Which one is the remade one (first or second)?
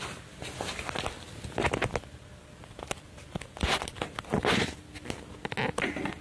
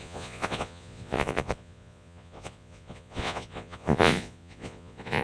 second